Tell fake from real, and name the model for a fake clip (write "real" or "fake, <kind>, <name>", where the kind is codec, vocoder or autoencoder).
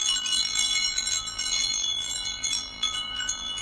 fake, vocoder, BigVGAN v2